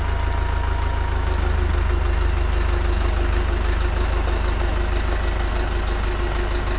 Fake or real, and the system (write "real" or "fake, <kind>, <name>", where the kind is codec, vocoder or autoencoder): real